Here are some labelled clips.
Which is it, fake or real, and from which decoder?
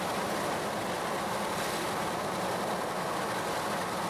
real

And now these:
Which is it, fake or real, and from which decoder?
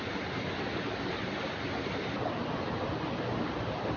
real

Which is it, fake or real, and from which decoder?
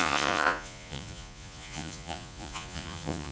fake, vocoder, Vocos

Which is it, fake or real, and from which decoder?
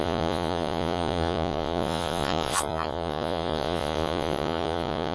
fake, vocoder, Vocos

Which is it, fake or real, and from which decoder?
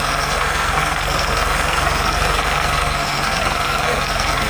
fake, codec, SNAC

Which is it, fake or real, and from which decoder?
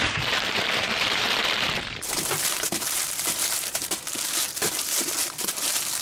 fake, vocoder, BigVGAN v2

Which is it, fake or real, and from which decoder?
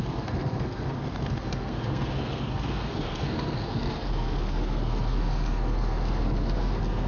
fake, codec, SNAC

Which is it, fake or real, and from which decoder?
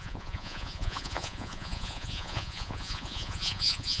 fake, vocoder, Vocos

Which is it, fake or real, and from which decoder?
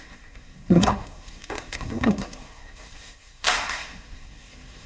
fake, codec, SNAC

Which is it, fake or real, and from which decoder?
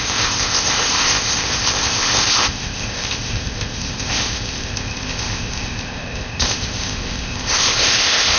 fake, codec, ZipCodec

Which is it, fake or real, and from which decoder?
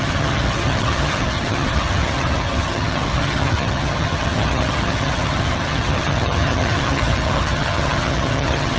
fake, vocoder, HiFi-GAN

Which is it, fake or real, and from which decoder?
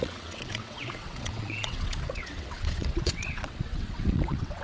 fake, vocoder, WaveNeXt